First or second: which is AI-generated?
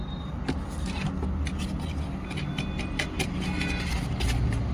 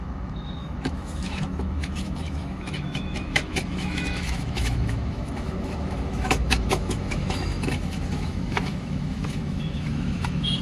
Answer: second